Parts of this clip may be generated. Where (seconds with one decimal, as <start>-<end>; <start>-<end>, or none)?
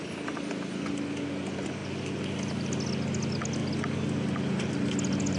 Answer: none